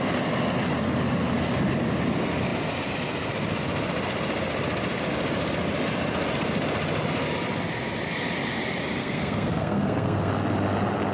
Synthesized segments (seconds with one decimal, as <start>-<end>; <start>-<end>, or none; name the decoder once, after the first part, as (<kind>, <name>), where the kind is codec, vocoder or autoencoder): 9.0-10.3 (codec, SNAC)

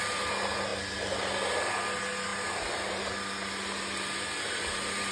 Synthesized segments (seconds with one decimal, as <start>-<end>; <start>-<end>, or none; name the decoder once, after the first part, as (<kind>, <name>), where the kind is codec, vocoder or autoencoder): none